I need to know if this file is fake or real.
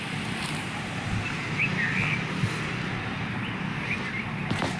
real